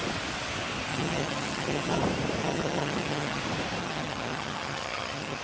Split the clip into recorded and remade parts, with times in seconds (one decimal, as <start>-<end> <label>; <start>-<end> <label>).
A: 0.0-0.9 recorded; 0.9-2.0 remade; 2.0-2.4 recorded; 2.4-3.4 remade; 3.4-3.8 recorded; 3.8-5.4 remade